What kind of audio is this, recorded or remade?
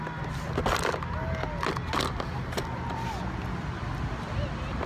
recorded